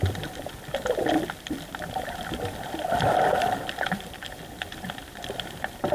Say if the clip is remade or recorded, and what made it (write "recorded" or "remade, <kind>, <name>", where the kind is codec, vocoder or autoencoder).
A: remade, vocoder, BigVGAN v2